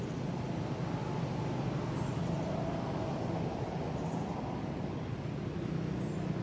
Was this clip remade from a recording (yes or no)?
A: no